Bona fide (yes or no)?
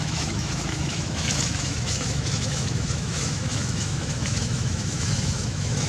no